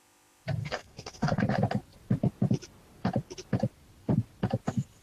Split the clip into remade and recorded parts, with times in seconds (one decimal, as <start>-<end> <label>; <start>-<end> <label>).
0.0-0.6 recorded; 0.6-1.4 remade; 1.4-5.0 recorded